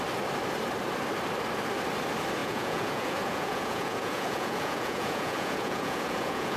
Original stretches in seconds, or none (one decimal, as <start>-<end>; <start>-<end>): 0.0-2.4